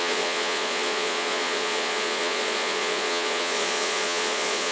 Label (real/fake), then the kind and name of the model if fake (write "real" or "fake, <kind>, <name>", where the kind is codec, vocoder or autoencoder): fake, vocoder, Vocos